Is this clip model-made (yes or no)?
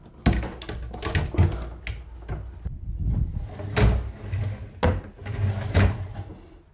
no